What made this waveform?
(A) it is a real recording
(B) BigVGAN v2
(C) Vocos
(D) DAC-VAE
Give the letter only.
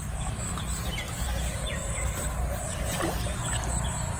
A